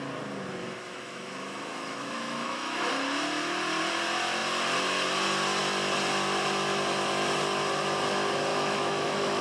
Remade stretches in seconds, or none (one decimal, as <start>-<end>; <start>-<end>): 0.6-2.9; 8.5-9.4